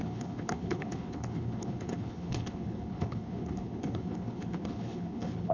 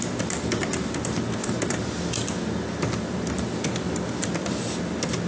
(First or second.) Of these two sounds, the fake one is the first